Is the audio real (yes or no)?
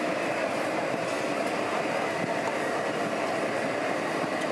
yes